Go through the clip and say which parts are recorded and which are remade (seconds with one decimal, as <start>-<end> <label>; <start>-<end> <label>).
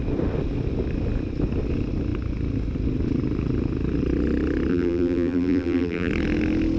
0.0-4.7 recorded; 4.7-6.1 remade; 6.1-6.8 recorded